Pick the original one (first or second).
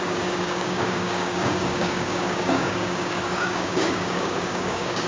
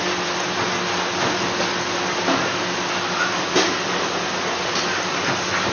second